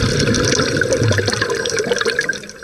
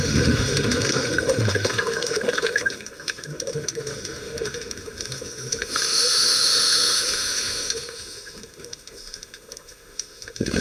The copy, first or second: second